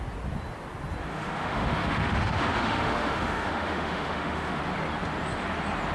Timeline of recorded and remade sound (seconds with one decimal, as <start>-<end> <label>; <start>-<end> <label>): 0.0-1.1 recorded; 1.1-4.6 remade; 4.6-5.9 recorded